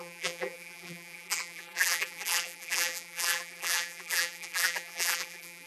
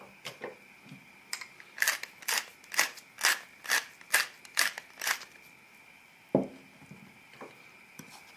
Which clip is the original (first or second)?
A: second